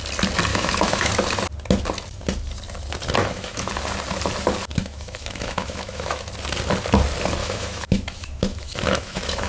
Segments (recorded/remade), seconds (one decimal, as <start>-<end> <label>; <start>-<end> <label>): 0.0-0.5 recorded; 0.5-1.1 remade; 1.1-3.2 recorded; 3.2-3.7 remade; 3.7-4.8 recorded; 4.8-6.3 remade; 6.3-7.4 recorded; 7.4-9.5 remade